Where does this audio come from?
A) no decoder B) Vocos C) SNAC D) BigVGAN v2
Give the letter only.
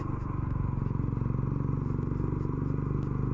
A